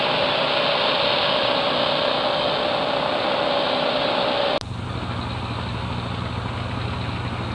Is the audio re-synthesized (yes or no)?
no